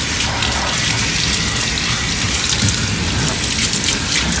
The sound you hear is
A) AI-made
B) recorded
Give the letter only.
B